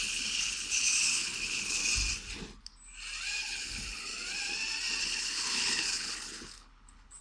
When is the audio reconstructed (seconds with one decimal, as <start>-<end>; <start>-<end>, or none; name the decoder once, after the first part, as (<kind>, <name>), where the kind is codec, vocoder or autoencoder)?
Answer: 0.0-1.8 (codec, HILCodec); 3.4-4.1; 5.0-7.2